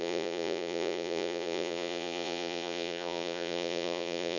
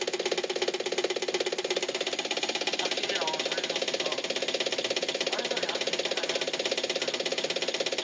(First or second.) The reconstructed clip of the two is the first